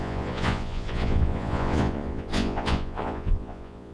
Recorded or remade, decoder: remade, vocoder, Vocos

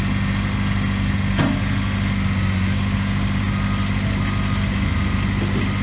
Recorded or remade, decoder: recorded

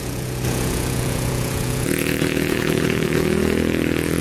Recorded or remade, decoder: remade, vocoder, Vocos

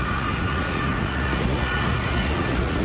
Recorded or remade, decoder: remade, vocoder, Vocos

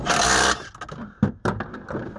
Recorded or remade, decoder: recorded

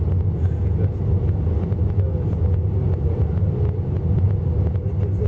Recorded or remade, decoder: recorded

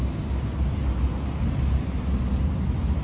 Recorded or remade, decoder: recorded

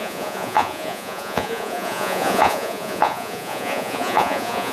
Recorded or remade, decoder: remade, vocoder, Vocos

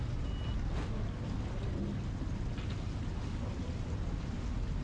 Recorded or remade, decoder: recorded